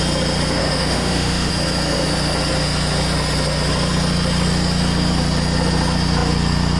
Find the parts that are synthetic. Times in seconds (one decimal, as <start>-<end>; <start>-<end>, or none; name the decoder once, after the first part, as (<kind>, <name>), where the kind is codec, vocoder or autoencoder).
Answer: 0.6-1.5 (autoencoder, DAC-VAE)